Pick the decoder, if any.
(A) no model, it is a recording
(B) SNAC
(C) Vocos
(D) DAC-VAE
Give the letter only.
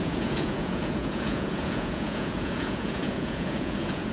C